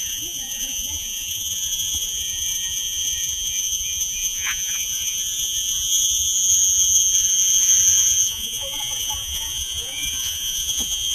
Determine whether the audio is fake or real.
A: fake